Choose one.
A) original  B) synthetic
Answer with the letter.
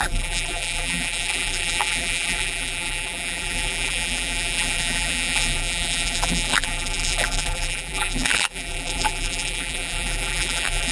B